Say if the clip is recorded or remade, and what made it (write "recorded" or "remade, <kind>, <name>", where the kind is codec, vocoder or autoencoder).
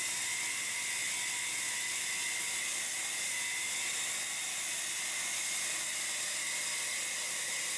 recorded